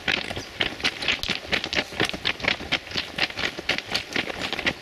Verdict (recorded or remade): recorded